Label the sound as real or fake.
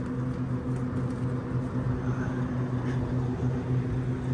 real